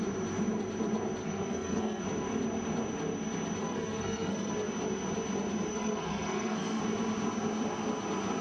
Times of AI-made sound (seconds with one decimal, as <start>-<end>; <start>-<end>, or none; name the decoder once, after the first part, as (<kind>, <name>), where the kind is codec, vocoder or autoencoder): 1.2-2.0 (codec, SNAC); 3.6-4.5; 5.7-6.8